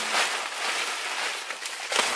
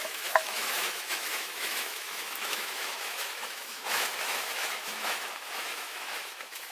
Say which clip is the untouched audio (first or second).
first